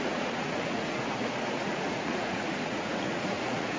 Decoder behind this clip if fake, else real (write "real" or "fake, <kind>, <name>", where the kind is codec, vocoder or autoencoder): fake, vocoder, Vocos